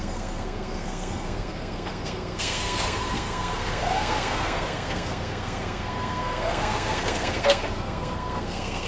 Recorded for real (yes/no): no